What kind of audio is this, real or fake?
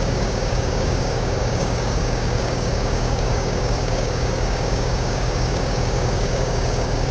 fake